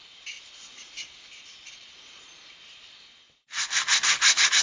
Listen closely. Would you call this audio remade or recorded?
recorded